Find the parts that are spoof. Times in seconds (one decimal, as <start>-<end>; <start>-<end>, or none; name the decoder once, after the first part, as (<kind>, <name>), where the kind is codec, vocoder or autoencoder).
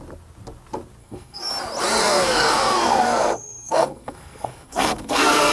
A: 1.0-1.5 (codec, SNAC); 2.0-5.5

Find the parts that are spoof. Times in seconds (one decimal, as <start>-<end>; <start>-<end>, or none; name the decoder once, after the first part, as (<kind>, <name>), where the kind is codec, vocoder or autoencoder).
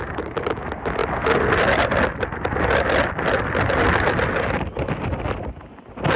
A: none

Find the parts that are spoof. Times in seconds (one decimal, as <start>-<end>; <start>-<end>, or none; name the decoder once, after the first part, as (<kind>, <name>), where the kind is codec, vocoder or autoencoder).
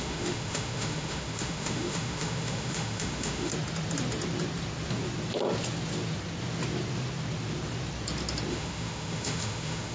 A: 0.0-3.5 (autoencoder, DAC-VAE); 8.5-9.9